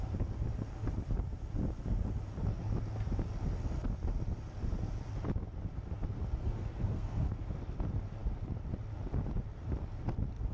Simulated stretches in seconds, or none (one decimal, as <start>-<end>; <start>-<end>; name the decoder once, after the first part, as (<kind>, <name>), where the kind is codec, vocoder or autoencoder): 6.4-7.5 (codec, SNAC)